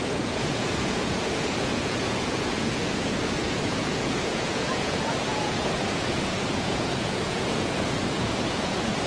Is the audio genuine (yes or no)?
no